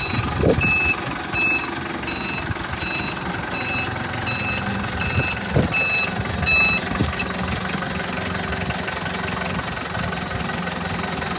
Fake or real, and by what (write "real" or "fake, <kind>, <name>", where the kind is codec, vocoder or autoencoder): real